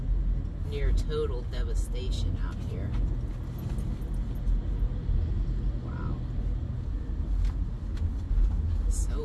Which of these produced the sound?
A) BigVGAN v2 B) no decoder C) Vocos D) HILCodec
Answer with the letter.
B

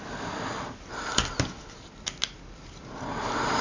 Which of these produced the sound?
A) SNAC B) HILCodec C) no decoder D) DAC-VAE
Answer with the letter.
C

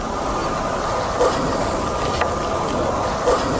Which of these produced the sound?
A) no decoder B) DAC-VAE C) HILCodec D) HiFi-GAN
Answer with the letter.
A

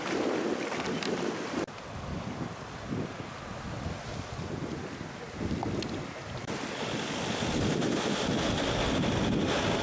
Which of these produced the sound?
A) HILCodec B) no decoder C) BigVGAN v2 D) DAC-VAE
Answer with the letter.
B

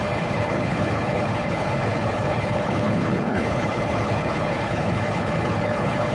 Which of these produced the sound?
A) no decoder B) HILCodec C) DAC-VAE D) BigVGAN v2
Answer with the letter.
B